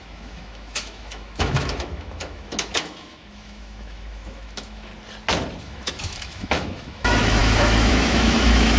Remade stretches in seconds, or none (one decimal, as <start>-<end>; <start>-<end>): 0.0-4.9; 5.6-8.8